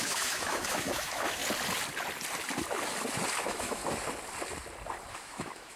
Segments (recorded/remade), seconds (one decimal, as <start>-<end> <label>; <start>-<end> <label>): 0.0-1.4 remade; 1.4-3.4 recorded; 3.4-3.8 remade; 3.8-5.1 recorded; 5.1-5.8 remade